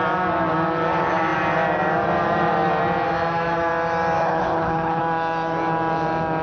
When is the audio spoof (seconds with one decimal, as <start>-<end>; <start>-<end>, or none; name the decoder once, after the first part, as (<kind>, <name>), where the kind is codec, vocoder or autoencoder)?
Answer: 4.2-5.0 (codec, HILCodec)